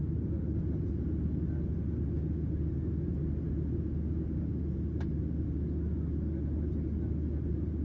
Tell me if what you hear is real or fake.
real